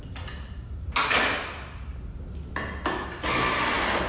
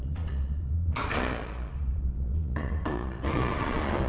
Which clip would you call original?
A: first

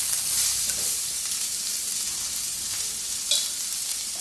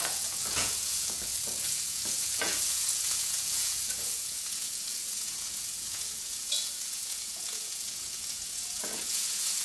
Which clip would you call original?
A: first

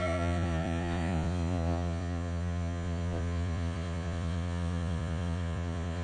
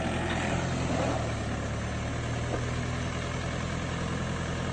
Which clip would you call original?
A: second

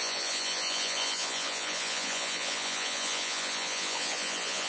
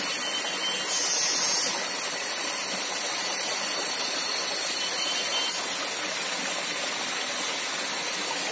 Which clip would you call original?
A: second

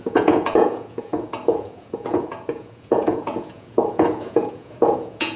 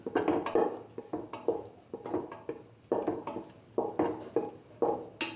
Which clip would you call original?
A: second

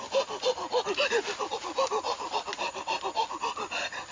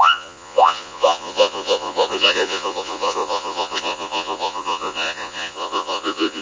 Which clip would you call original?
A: first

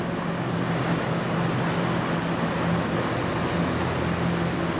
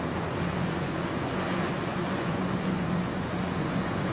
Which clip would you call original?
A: first